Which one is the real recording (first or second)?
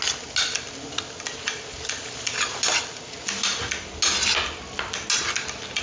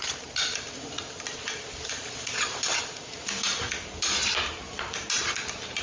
first